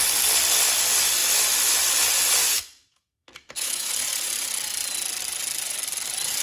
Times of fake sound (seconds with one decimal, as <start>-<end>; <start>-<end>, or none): 2.4-3.9